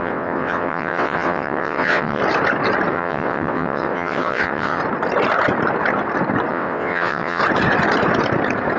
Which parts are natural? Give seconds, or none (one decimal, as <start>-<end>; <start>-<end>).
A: 2.2-2.9; 4.8-6.5; 7.4-8.8